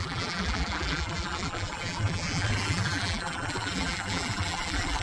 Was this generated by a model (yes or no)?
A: yes